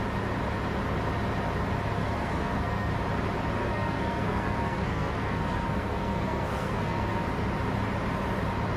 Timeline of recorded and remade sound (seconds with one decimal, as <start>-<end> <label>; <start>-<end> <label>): 0.0-2.0 recorded; 2.0-2.9 remade; 2.9-3.6 recorded; 3.6-7.2 remade; 7.2-8.8 recorded